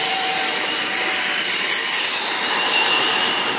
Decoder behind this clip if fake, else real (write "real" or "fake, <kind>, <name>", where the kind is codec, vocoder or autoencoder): fake, vocoder, BigVGAN v2